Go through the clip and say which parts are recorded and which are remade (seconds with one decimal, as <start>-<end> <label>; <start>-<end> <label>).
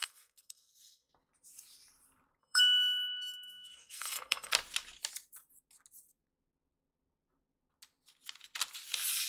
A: 0.0-1.1 remade; 1.1-2.4 recorded; 2.4-4.5 remade; 4.5-9.3 recorded